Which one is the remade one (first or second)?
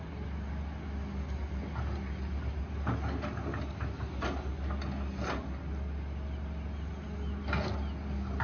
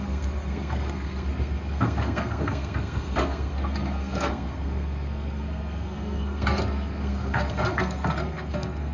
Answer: second